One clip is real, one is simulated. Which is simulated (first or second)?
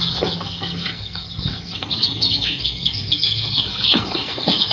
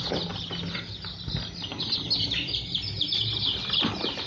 first